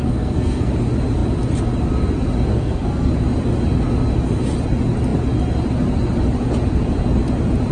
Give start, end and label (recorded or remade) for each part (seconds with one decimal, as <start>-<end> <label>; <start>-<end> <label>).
0.0-0.7 remade; 0.7-2.5 recorded; 2.5-3.1 remade; 3.1-7.7 recorded